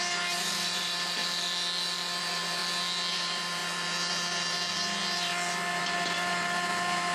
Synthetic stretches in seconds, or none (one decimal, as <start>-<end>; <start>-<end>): 0.0-1.2; 2.2-2.6; 3.1-5.3; 5.8-7.1